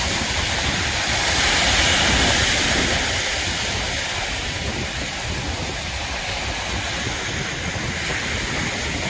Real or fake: real